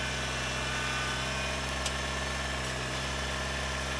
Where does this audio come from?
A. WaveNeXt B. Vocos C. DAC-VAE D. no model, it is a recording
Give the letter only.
D